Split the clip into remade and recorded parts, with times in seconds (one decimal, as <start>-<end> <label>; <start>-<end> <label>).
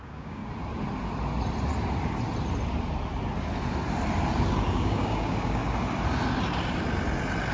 0.0-0.4 remade; 0.4-4.7 recorded; 4.7-5.6 remade; 5.6-7.5 recorded